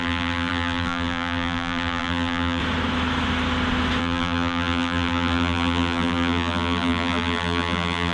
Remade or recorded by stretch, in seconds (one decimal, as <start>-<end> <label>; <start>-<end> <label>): 0.0-2.6 remade; 2.6-4.0 recorded; 4.0-8.1 remade